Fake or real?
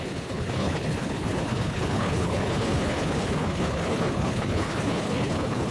fake